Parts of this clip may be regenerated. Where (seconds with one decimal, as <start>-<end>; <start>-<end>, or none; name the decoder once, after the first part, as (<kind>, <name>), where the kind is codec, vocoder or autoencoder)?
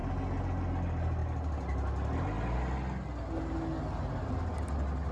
none